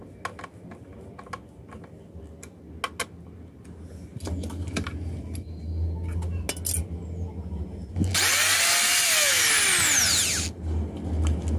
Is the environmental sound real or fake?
real